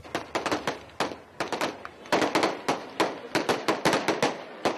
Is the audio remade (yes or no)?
no